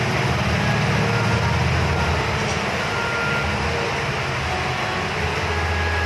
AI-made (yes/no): no